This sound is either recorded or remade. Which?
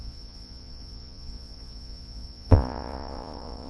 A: remade